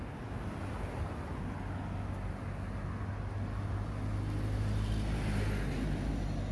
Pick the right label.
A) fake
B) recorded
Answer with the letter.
B